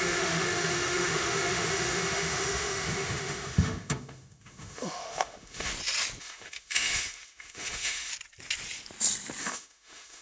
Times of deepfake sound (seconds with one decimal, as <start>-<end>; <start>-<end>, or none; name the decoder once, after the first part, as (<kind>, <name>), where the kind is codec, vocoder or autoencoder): 0.0-5.7 (autoencoder, DAC-VAE); 6.2-8.1; 9.4-10.2